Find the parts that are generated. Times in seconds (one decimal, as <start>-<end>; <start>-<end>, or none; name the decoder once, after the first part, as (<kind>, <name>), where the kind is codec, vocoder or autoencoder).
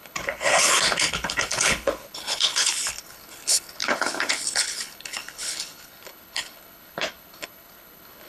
0.0-8.3 (codec, HILCodec)